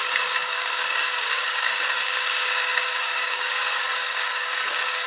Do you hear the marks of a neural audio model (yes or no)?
yes